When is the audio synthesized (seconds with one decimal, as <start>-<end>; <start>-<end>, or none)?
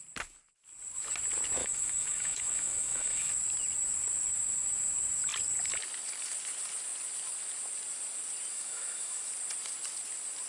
1.6-3.3; 8.5-9.3